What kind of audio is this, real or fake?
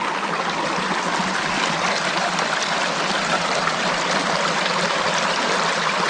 real